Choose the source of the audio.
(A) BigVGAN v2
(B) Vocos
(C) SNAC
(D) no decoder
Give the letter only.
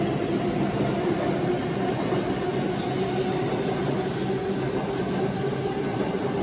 D